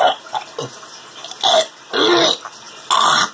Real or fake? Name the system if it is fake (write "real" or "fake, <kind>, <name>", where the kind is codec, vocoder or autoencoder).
real